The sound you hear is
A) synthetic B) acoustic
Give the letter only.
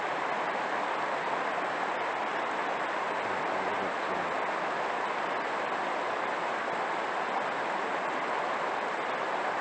B